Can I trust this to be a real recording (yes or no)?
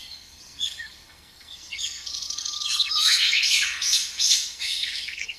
no